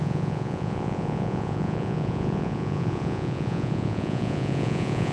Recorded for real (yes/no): no